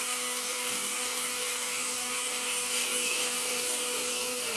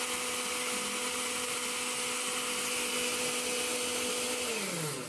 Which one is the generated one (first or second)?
first